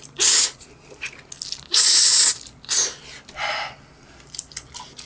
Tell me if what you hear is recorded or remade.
recorded